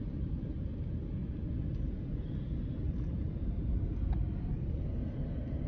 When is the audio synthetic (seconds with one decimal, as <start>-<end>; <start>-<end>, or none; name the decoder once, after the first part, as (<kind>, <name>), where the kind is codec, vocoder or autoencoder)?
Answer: none